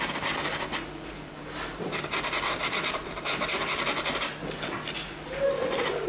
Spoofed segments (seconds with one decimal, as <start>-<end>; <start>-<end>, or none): none